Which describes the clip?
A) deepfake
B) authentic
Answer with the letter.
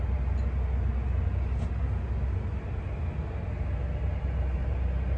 B